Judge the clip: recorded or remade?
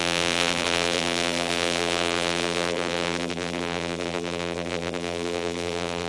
remade